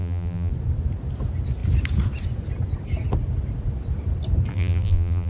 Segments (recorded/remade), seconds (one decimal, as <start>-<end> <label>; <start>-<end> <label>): 0.0-0.5 remade; 0.5-4.5 recorded; 4.5-5.3 remade

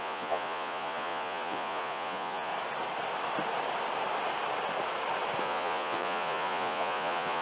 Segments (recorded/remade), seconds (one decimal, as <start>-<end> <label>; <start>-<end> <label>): 0.0-2.5 remade; 2.5-5.4 recorded; 5.4-7.4 remade